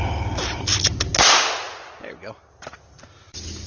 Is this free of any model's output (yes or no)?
yes